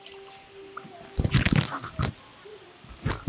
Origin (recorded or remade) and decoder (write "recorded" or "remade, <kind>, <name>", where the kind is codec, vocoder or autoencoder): recorded